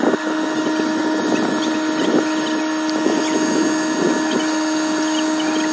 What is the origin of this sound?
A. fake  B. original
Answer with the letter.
B